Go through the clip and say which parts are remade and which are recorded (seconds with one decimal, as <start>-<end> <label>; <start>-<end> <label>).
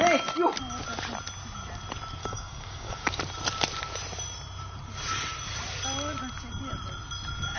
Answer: 0.0-2.2 recorded; 2.2-3.2 remade; 3.2-7.6 recorded